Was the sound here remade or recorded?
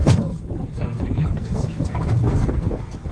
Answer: remade